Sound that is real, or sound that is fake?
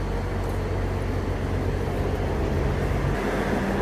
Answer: real